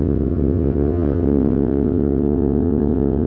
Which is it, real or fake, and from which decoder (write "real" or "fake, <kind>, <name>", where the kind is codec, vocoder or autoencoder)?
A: fake, vocoder, WaveNeXt